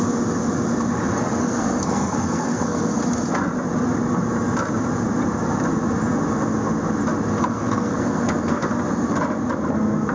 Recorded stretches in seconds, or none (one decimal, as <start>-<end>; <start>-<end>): 0.0-1.4; 3.0-7.4; 8.7-10.1